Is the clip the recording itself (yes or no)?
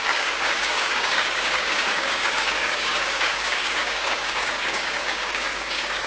no